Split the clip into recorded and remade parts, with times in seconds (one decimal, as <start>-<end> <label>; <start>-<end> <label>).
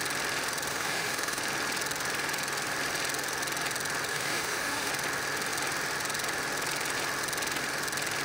0.0-0.7 recorded; 0.7-1.4 remade; 1.4-4.1 recorded; 4.1-4.9 remade; 4.9-8.2 recorded